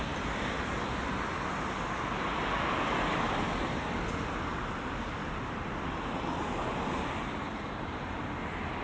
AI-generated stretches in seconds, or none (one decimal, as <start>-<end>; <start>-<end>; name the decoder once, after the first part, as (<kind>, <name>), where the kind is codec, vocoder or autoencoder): 7.5-8.2 (vocoder, BigVGAN v2)